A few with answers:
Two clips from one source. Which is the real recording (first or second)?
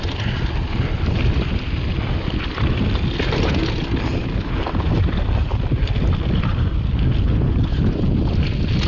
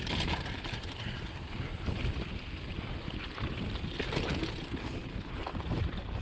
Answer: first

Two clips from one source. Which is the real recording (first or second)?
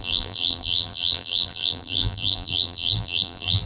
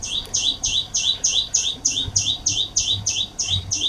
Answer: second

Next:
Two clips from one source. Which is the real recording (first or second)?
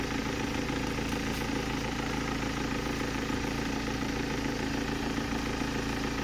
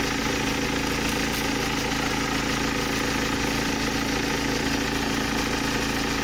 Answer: second